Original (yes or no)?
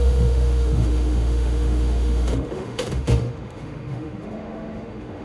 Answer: no